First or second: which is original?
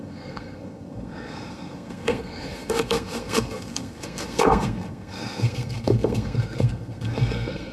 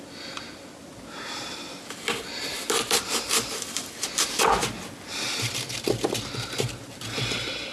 second